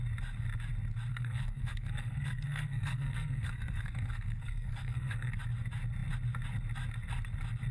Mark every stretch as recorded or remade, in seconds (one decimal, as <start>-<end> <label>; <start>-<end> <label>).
0.0-1.1 recorded; 1.1-5.4 remade; 5.4-7.7 recorded

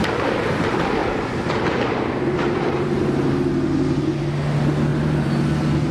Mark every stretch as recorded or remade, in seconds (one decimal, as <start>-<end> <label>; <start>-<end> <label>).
0.0-1.0 recorded; 1.0-3.3 remade; 3.3-4.9 recorded; 4.9-5.4 remade; 5.4-5.9 recorded

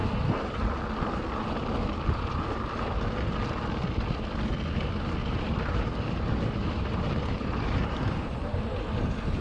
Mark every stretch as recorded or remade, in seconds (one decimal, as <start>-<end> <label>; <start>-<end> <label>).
0.0-5.2 recorded; 5.2-9.4 remade

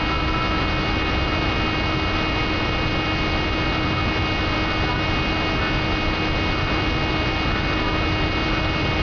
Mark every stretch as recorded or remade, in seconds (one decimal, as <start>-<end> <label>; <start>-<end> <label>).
0.0-9.0 recorded

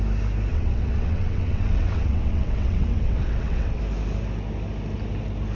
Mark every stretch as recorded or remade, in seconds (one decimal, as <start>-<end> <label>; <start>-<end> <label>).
0.0-0.5 recorded; 0.5-3.8 remade; 3.8-5.5 recorded

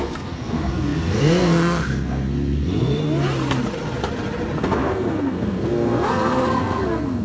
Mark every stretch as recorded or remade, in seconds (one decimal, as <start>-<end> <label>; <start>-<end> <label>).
0.0-3.0 remade; 3.0-4.6 recorded; 4.6-7.2 remade